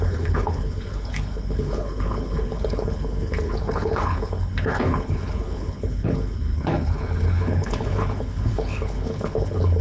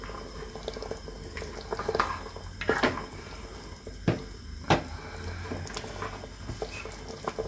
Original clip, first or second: second